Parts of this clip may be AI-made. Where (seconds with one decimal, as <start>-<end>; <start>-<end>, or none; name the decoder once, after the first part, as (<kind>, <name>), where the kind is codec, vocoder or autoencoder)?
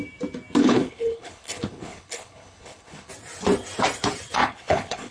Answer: 0.6-3.1 (codec, HILCodec); 4.4-5.1